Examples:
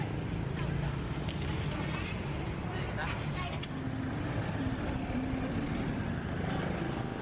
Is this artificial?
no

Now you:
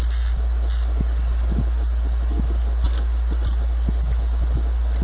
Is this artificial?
no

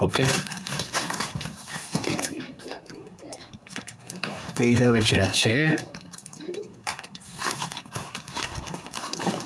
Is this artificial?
yes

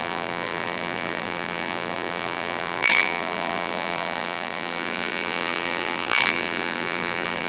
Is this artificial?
yes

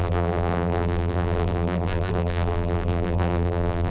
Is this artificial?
yes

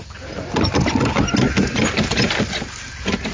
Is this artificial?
no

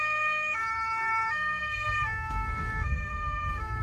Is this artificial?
yes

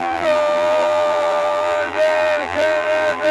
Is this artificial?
yes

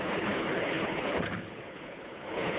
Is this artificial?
yes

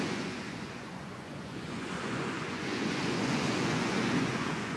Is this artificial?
yes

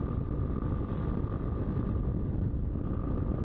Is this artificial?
no